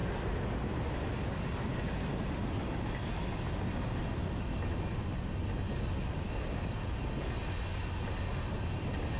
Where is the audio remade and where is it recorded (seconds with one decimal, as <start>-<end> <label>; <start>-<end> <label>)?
0.0-9.2 recorded